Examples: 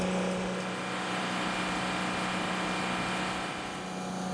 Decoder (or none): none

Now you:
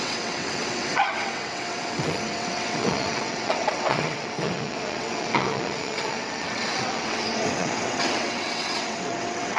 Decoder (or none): vocoder, WaveNeXt